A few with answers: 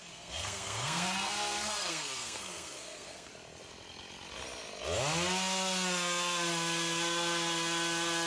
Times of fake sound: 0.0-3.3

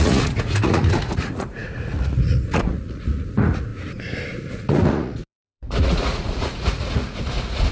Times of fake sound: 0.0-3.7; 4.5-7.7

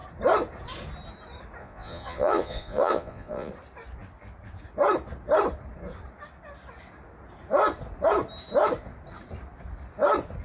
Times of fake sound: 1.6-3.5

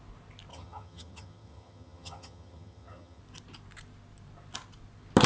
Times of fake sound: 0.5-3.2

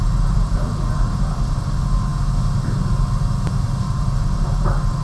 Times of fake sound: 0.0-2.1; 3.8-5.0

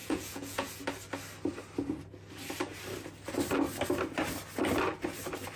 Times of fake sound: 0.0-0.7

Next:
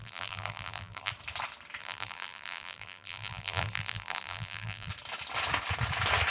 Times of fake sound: 0.0-1.1; 1.8-4.9